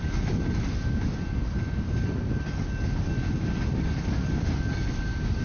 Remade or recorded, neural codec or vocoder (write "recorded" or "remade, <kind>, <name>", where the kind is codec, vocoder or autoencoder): recorded